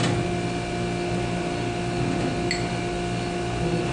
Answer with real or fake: real